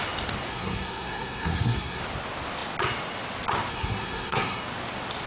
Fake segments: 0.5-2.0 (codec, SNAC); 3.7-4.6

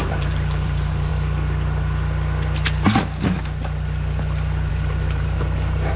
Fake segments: 0.0-1.1 (vocoder, BigVGAN v2); 4.7-6.0

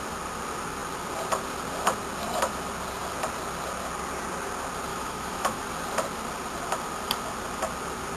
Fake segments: 4.9-5.6 (autoencoder, DAC-VAE)

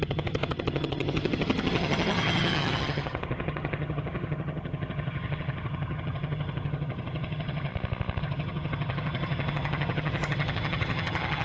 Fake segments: 0.0-7.7 (vocoder, HiFi-GAN); 8.2-11.4

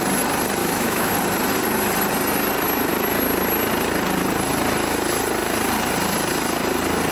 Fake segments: 0.6-1.1 (autoencoder, DAC-VAE)

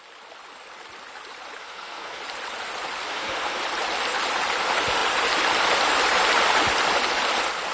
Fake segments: 1.6-2.2 (codec, SNAC); 3.0-3.6

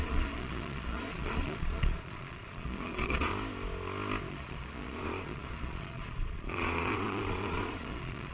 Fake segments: 0.0-3.3 (vocoder, Vocos); 4.3-8.3

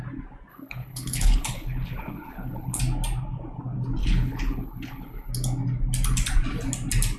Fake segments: 0.5-2.8 (codec, HILCodec); 4.0-5.3